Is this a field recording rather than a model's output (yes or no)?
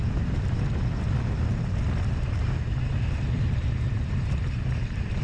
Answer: yes